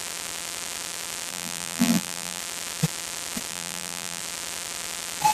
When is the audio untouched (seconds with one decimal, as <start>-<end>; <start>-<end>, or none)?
0.0-1.3; 2.4-3.5; 4.2-5.3